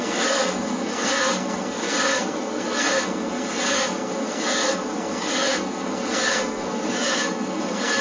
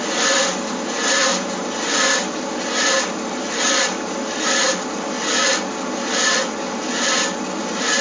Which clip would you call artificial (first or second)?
first